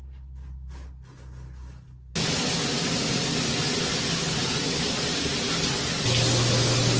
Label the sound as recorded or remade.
recorded